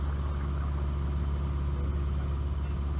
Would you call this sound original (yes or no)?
yes